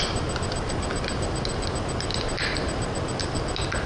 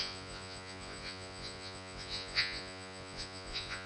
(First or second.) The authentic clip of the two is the first